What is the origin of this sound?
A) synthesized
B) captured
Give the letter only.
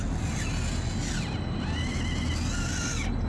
B